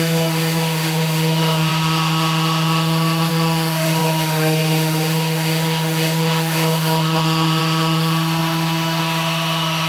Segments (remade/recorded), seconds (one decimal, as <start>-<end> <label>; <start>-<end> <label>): 0.0-9.9 remade